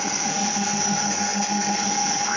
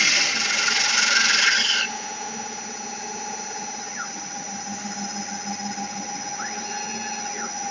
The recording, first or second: second